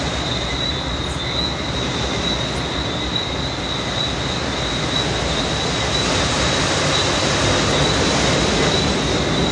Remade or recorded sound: recorded